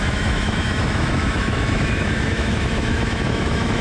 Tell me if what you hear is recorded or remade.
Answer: remade